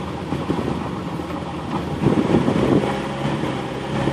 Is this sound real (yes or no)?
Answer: no